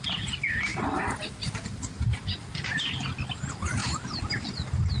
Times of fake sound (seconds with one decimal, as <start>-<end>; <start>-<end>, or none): 3.8-4.4